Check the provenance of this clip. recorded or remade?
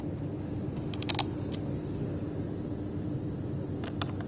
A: recorded